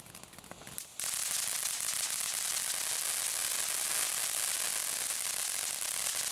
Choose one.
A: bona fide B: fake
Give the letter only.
A